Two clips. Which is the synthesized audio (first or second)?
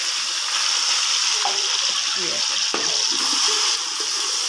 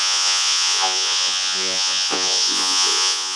second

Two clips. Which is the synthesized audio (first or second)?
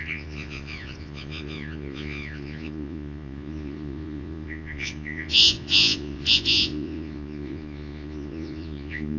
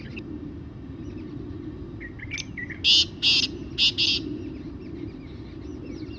first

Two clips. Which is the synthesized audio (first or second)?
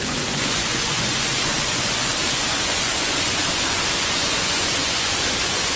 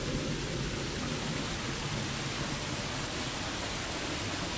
first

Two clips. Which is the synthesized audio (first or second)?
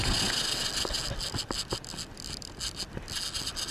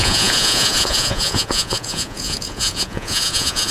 second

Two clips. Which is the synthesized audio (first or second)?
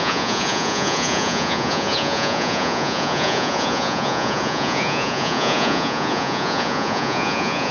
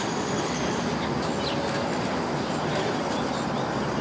first